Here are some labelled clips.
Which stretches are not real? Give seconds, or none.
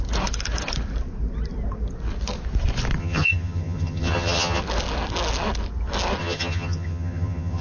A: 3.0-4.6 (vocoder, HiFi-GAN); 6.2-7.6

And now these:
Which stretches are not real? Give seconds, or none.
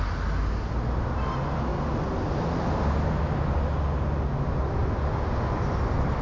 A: none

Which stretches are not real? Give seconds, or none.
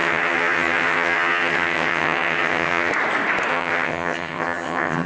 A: 0.0-2.9 (vocoder, HiFi-GAN); 3.5-5.1